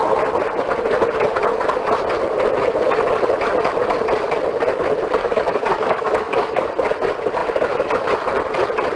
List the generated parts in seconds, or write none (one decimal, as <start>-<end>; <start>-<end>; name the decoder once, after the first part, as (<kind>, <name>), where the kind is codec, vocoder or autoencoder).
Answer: 5.2-6.7 (codec, DAC)